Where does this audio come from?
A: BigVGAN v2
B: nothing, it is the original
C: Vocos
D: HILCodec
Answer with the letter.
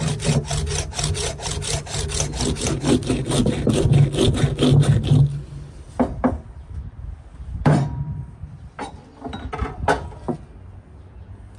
B